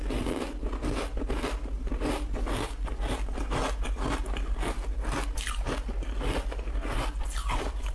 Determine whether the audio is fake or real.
real